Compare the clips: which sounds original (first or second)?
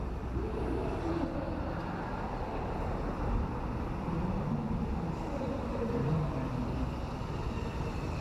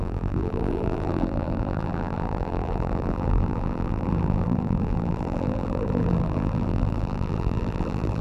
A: first